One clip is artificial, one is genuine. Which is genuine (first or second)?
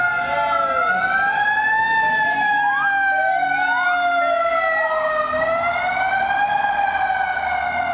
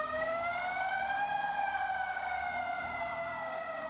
first